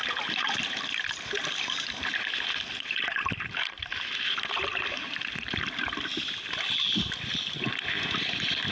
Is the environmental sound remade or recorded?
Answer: recorded